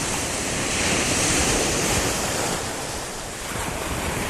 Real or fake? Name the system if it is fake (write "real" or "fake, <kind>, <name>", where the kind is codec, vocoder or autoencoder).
fake, vocoder, BigVGAN v2